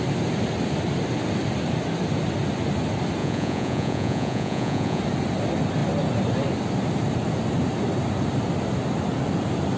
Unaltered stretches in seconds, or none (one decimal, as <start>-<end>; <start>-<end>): 0.0-3.2; 5.0-9.8